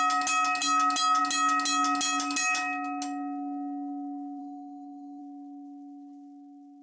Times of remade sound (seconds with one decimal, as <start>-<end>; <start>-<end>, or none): 4.4-5.2